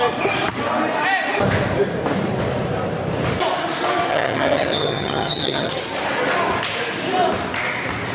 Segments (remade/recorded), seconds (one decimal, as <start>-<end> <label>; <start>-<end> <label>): 0.0-4.1 recorded; 4.1-5.8 remade; 5.8-8.1 recorded